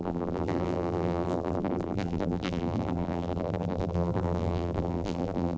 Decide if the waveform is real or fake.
fake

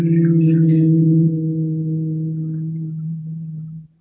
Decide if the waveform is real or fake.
real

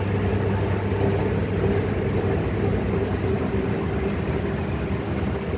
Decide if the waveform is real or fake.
real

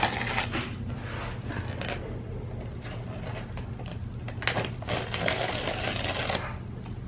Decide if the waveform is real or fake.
real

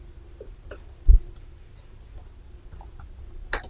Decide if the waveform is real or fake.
real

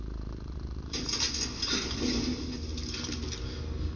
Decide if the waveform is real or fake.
real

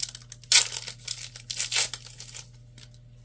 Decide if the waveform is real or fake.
real